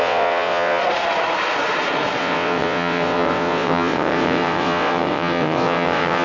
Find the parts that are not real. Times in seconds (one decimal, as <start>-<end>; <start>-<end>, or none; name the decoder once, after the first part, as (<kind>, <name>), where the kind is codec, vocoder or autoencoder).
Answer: 0.0-0.8 (vocoder, WaveNeXt); 2.2-6.2